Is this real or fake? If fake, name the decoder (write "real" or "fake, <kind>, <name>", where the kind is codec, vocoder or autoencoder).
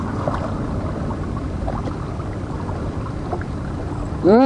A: fake, vocoder, BigVGAN v2